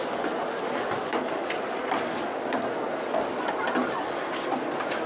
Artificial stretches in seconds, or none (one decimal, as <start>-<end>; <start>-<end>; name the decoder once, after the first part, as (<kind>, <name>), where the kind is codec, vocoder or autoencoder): none